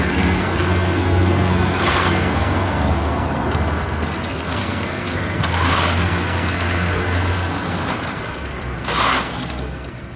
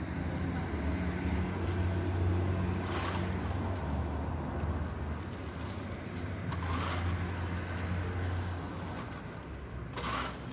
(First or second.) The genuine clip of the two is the second